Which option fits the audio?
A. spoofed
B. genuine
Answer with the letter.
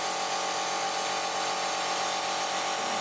B